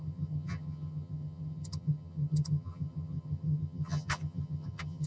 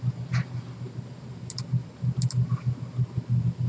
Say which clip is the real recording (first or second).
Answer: second